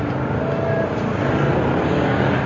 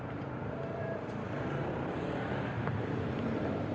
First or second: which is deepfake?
second